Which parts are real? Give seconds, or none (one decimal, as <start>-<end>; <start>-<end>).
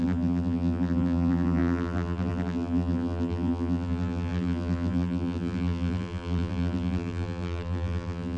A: none